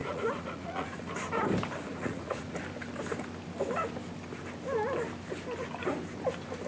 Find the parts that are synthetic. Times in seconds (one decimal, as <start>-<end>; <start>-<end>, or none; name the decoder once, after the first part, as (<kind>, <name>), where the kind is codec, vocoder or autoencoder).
0.0-1.1 (vocoder, Vocos); 1.9-2.6